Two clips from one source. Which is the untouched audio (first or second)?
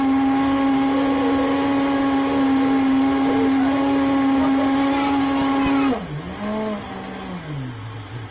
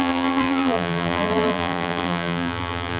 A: first